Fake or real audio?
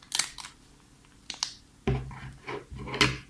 real